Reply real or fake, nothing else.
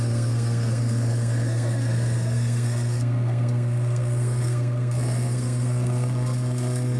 fake